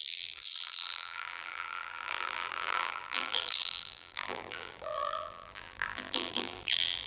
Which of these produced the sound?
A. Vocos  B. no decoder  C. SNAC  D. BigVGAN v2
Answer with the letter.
D